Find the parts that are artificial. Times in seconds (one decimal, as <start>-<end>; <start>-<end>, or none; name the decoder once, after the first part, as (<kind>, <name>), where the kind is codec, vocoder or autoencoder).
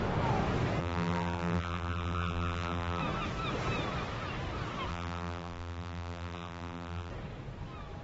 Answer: 0.8-3.0 (vocoder, BigVGAN v2); 4.9-7.1